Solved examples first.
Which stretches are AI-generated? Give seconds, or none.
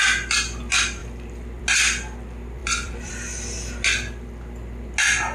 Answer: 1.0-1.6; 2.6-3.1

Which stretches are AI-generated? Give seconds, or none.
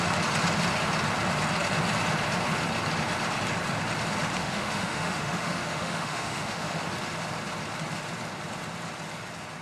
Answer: 4.4-6.9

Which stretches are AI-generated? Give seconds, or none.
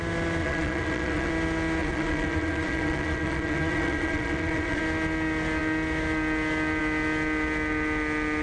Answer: 0.4-1.3; 1.8-4.8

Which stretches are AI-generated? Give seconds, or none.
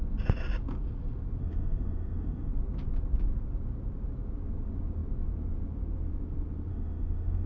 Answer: 1.4-2.5; 6.7-7.5